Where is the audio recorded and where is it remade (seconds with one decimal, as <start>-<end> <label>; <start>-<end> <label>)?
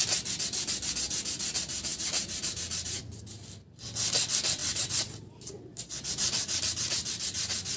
0.0-1.9 recorded; 1.9-3.0 remade; 3.0-4.6 recorded; 4.6-5.9 remade; 5.9-7.8 recorded